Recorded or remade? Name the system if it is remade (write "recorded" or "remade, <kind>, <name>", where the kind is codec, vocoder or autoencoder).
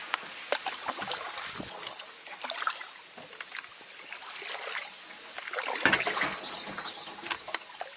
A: recorded